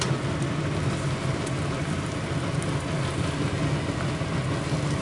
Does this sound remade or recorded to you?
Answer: recorded